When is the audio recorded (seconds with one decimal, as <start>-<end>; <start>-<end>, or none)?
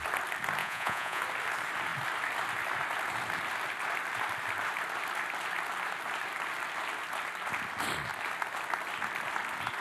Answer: 0.0-0.6; 1.2-9.8